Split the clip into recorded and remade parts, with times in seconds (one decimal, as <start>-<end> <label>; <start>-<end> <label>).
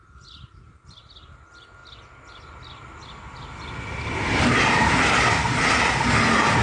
0.0-6.6 recorded